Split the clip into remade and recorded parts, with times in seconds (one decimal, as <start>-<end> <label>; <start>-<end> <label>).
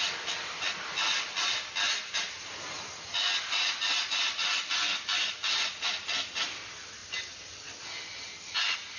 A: 0.0-9.0 recorded